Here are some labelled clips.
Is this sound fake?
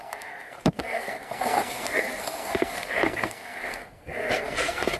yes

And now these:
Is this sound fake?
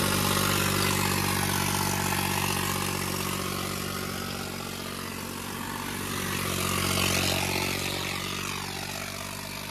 no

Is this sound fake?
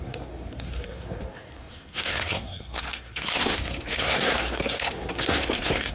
yes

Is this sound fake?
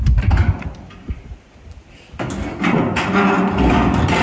no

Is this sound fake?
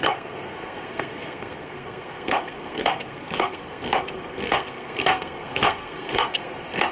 yes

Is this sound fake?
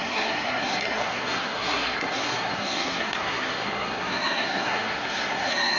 yes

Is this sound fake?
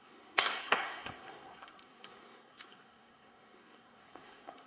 yes